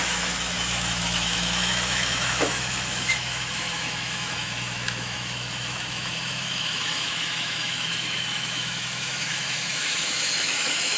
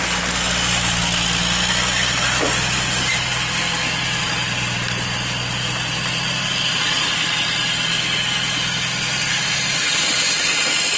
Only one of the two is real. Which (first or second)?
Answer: second